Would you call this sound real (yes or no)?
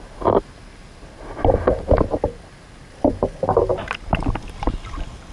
yes